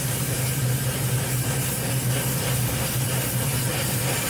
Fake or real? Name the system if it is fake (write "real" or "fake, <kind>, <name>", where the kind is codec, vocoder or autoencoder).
real